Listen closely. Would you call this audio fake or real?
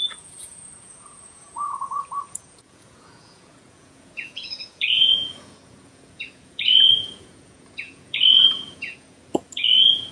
fake